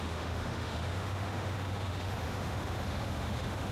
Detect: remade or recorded remade